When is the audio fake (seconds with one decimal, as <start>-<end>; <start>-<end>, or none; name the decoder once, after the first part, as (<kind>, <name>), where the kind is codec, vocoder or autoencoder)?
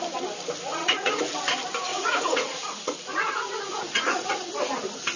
0.7-1.2 (vocoder, Vocos); 1.9-4.5